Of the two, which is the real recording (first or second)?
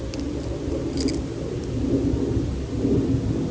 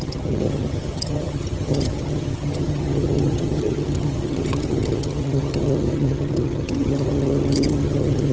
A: first